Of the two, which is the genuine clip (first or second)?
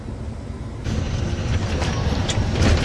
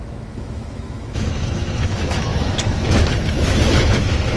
first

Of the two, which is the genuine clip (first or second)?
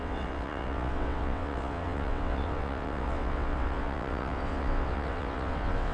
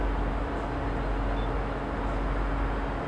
second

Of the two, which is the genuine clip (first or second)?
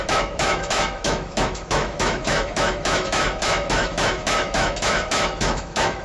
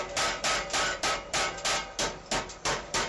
second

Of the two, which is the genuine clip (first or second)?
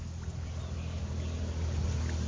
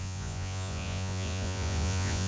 first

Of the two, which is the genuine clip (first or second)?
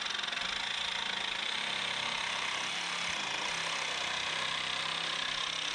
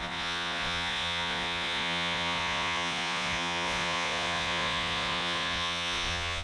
first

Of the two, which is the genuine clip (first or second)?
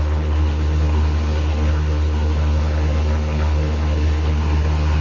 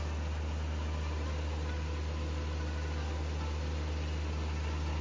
second